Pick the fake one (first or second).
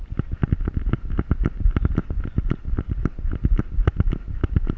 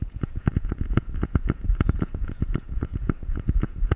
second